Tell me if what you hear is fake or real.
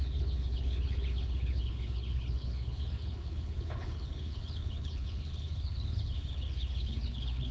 fake